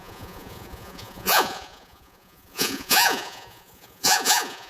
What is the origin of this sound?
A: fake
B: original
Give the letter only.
A